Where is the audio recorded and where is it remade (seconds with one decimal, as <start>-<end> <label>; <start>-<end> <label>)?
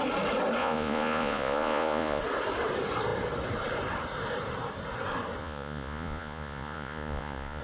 0.0-0.6 recorded; 0.6-2.2 remade; 2.2-5.4 recorded; 5.4-7.6 remade